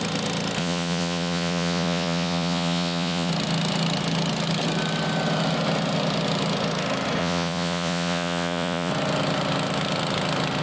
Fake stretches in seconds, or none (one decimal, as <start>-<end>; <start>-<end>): 0.6-3.3; 7.2-8.9